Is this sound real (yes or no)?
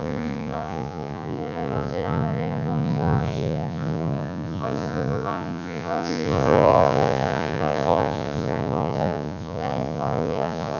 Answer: no